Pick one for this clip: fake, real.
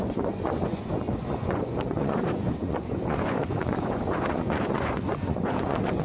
fake